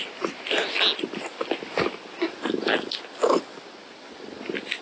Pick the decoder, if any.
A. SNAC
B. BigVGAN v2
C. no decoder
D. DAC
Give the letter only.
C